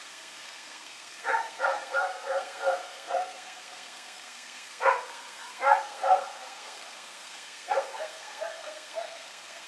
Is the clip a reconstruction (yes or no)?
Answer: yes